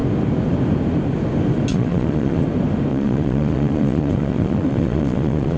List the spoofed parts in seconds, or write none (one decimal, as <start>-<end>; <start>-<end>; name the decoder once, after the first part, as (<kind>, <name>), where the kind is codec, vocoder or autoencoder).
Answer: 1.7-2.4 (vocoder, Vocos); 2.9-5.6